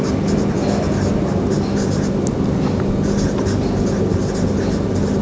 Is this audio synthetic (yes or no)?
no